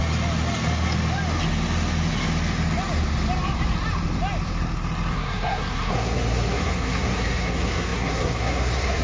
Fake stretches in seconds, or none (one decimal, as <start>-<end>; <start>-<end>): 5.1-9.0